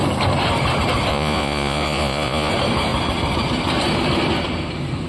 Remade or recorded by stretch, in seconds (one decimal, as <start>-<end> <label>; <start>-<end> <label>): 0.0-1.1 recorded; 1.1-2.5 remade; 2.5-5.1 recorded